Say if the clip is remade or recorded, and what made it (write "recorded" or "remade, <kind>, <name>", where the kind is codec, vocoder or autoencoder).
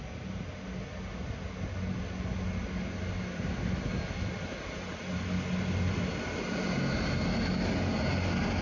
recorded